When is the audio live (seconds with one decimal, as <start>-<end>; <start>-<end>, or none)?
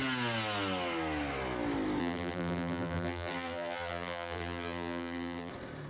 0.0-2.0; 5.5-5.9